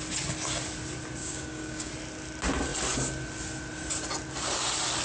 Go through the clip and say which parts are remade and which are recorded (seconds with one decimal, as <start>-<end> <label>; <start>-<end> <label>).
0.0-1.2 recorded; 1.2-1.9 remade; 1.9-5.0 recorded